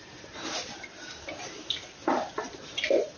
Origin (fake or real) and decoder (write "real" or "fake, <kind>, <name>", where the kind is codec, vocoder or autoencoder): real